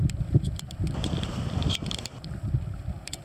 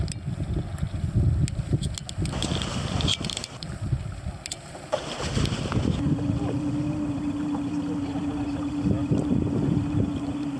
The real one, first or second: second